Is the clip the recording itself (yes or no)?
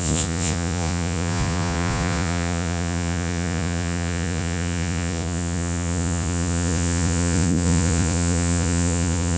no